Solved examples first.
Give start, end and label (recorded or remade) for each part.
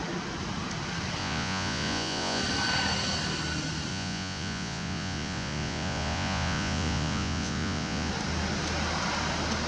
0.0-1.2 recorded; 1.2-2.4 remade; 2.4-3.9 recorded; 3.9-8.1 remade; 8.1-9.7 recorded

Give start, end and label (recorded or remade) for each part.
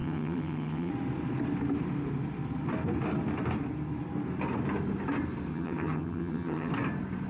0.0-0.9 remade; 0.9-5.5 recorded; 5.5-6.7 remade; 6.7-7.3 recorded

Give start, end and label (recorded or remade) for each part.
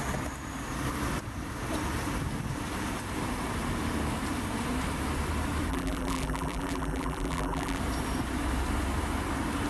0.0-5.7 recorded; 5.7-7.8 remade; 7.8-9.7 recorded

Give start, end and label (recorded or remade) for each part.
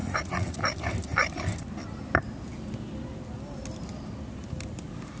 0.0-0.6 remade; 0.6-5.2 recorded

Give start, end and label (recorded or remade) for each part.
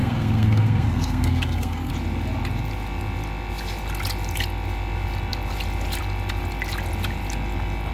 0.0-1.9 remade; 1.9-7.9 recorded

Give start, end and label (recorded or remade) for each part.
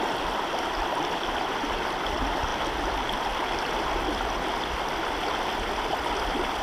0.0-6.6 recorded